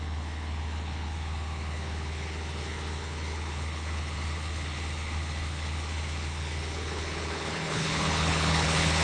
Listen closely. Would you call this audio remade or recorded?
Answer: remade